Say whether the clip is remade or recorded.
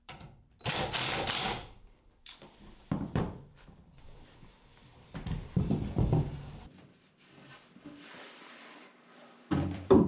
remade